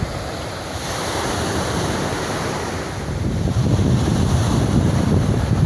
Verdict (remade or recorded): remade